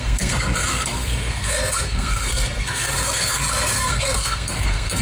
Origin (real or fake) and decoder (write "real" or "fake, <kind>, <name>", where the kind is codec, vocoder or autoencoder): fake, codec, SNAC